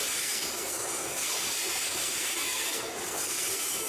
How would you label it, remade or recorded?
remade